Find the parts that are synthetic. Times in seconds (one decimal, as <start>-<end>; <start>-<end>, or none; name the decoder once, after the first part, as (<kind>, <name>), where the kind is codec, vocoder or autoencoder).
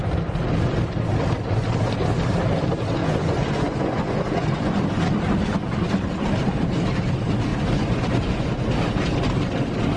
3.0-4.8 (vocoder, Vocos); 7.5-8.7